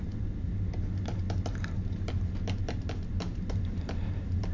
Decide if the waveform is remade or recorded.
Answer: recorded